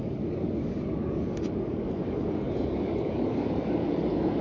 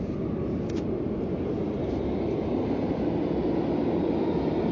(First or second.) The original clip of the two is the second